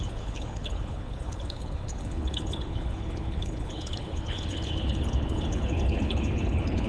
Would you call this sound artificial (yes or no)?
yes